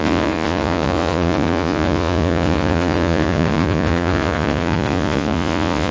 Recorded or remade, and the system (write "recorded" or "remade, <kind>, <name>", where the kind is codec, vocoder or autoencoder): remade, vocoder, Vocos